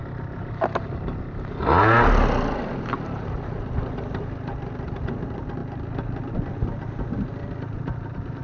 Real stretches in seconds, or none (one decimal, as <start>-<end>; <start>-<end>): 0.0-8.4